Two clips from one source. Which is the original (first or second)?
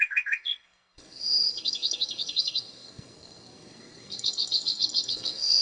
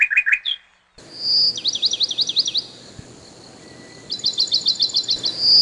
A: second